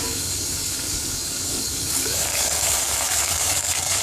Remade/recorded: remade